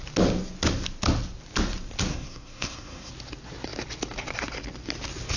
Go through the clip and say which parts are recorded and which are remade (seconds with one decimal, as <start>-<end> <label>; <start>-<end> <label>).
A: 0.0-2.1 recorded; 2.1-3.1 remade; 3.1-5.4 recorded